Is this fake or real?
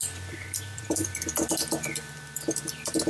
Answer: fake